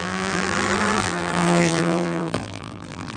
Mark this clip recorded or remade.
remade